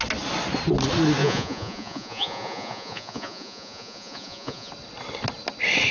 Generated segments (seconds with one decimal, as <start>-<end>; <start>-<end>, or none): 1.2-4.7